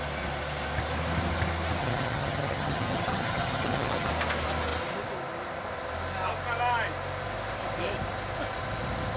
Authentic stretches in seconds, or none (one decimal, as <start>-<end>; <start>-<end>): 0.0-1.8; 4.1-9.2